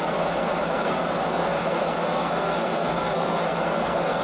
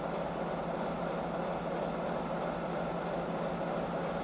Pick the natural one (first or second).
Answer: second